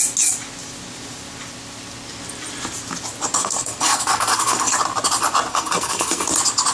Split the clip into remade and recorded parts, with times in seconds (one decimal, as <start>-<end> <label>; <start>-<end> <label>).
0.0-3.4 recorded; 3.4-4.7 remade; 4.7-5.5 recorded; 5.5-6.3 remade; 6.3-6.7 recorded